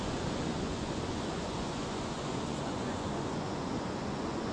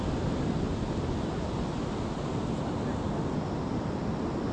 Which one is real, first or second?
second